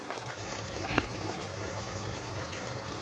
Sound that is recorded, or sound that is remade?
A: remade